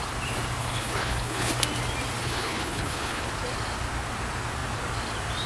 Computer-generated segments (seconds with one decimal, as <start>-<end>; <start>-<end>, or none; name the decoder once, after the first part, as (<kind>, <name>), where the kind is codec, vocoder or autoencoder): 0.6-1.5 (codec, HILCodec); 2.2-3.3